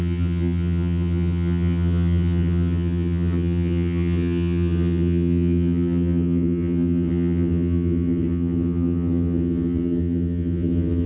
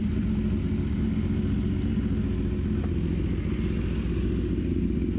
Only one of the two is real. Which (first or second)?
second